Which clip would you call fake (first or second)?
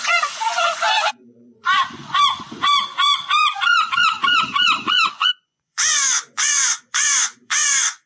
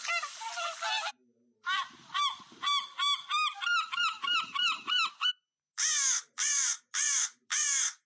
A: first